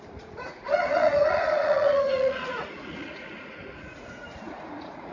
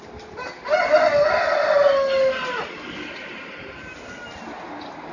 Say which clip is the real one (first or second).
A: second